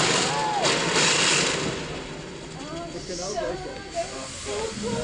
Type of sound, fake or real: real